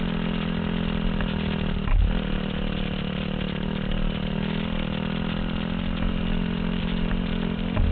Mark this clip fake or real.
real